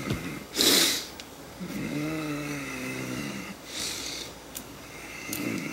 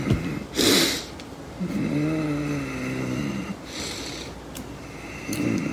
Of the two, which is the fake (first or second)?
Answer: first